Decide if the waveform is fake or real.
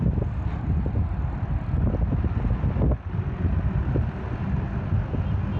real